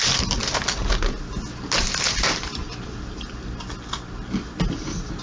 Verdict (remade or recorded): recorded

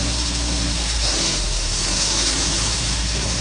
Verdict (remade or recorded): remade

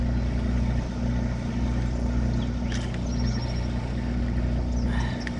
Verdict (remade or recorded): recorded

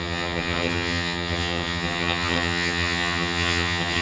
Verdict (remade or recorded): remade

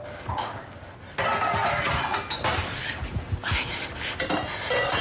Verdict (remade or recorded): recorded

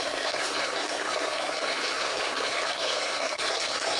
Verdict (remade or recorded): remade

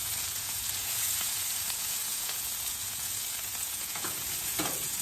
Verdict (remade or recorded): remade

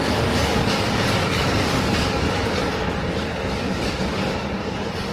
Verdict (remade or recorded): remade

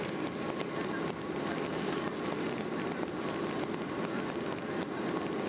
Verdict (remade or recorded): recorded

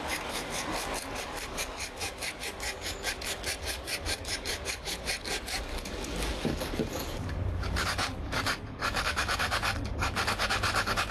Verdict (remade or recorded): remade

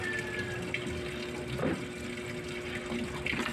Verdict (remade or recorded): recorded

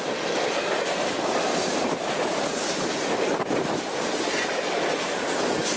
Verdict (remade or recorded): recorded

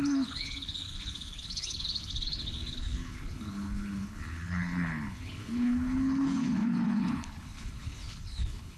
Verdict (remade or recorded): remade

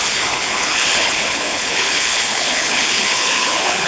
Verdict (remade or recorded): remade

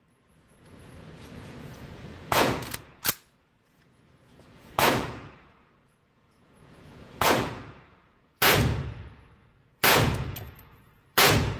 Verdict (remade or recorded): remade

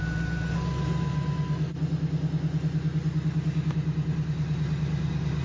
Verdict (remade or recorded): recorded